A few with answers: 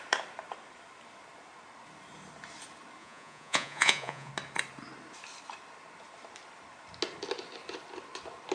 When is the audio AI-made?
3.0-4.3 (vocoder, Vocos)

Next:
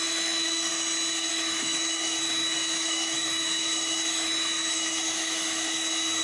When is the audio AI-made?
0.0-0.7 (autoencoder, DAC-VAE); 1.3-6.2

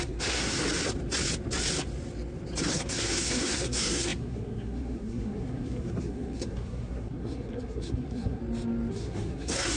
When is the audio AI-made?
0.0-0.6 (codec, SNAC); 2.7-8.4; 8.9-9.8

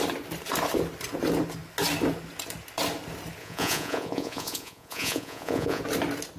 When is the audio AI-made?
3.4-5.8 (vocoder, Vocos)

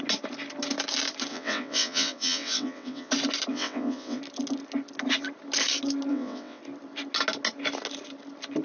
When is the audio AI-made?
1.3-3.1 (vocoder, WaveNeXt); 3.5-4.2; 6.1-6.6

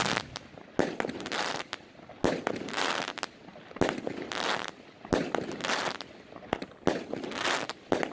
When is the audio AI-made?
none

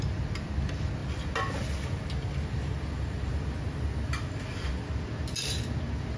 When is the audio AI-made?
none